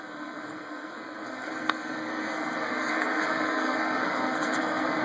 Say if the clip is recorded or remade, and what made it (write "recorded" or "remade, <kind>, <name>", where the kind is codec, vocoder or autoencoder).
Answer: remade, codec, SNAC